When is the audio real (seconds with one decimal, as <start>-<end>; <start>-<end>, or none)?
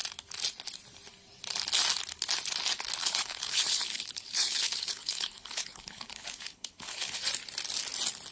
0.0-3.0; 7.2-8.3